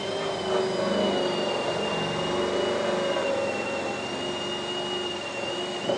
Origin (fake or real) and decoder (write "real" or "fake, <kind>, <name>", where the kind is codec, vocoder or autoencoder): real